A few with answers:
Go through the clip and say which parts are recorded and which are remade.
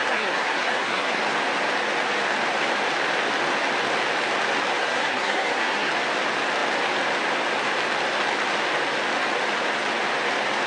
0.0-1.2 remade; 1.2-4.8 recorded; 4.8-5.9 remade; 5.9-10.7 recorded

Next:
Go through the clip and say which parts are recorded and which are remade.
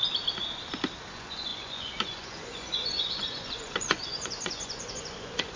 0.0-1.1 recorded; 1.1-5.6 remade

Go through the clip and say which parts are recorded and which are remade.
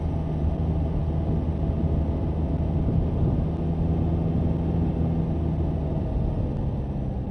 0.0-7.3 recorded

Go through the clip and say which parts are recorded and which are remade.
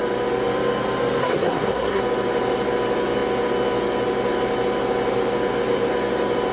0.0-1.2 recorded; 1.2-2.0 remade; 2.0-6.5 recorded